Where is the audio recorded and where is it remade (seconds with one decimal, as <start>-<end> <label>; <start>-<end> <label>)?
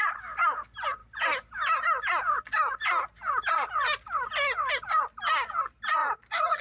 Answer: 0.0-6.6 recorded